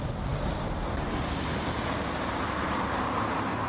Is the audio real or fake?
real